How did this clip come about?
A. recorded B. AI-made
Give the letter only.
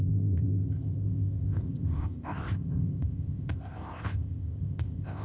B